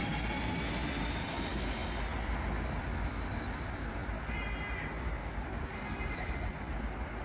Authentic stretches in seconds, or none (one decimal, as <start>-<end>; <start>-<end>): 0.0-7.2